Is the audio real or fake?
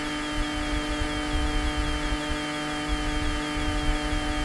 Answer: real